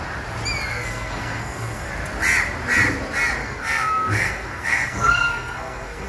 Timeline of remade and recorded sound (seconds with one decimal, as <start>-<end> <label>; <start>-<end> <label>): 0.0-0.7 recorded; 0.7-1.9 remade; 1.9-3.4 recorded; 3.4-6.1 remade